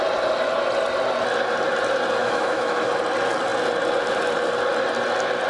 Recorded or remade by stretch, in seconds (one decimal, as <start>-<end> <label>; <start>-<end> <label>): 0.0-2.2 recorded; 2.2-2.9 remade; 2.9-5.5 recorded